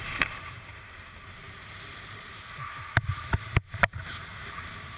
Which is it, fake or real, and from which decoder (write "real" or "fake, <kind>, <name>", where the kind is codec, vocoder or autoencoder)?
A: fake, vocoder, BigVGAN v2